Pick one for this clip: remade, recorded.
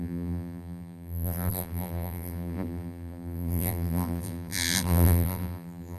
remade